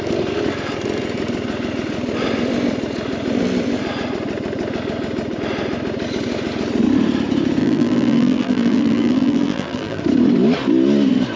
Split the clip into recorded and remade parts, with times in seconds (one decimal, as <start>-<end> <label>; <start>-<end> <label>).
0.0-7.6 recorded; 7.6-10.0 remade; 10.0-11.4 recorded